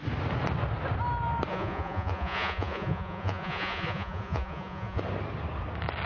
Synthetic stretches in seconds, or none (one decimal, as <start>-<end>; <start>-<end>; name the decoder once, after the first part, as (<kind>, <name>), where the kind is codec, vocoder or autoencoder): 1.5-5.0 (vocoder, Vocos)